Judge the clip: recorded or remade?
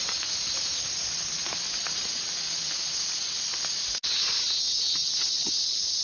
recorded